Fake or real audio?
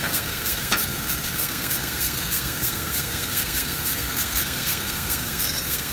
fake